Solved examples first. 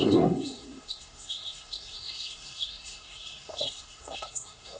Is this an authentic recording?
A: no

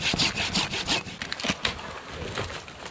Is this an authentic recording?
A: yes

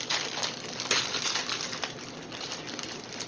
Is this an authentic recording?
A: no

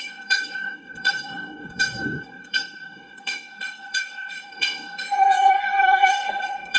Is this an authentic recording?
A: no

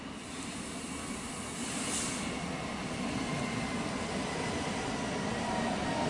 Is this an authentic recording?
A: yes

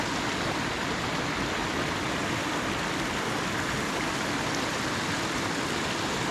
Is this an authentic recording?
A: yes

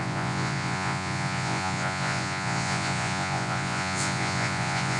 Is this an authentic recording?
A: no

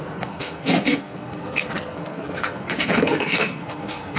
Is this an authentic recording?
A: no